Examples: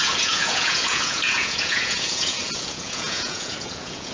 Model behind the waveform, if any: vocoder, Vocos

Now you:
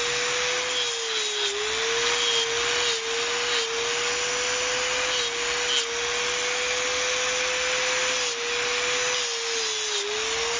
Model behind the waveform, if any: none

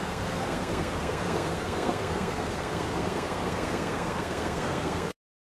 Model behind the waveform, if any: codec, SNAC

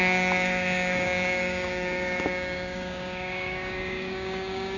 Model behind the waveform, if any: codec, DAC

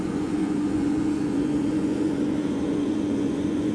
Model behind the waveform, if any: vocoder, Vocos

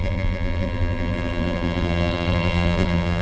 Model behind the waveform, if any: vocoder, BigVGAN v2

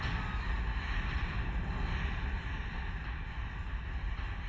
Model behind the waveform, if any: none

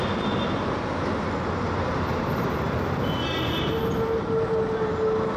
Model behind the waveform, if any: none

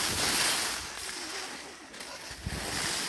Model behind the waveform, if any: none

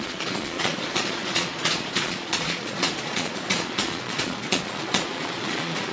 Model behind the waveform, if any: vocoder, Vocos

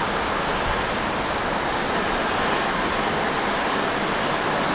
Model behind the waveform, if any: none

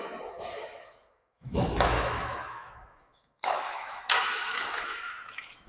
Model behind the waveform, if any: autoencoder, DAC-VAE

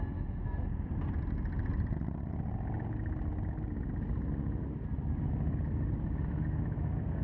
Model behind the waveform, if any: none